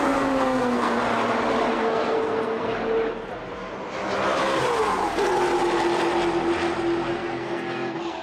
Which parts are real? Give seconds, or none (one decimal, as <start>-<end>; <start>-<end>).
1.1-1.7; 2.7-7.1